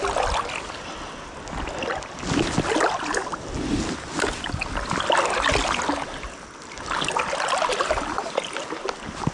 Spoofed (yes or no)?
no